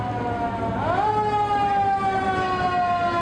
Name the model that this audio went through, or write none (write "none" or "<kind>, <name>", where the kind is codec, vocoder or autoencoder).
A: none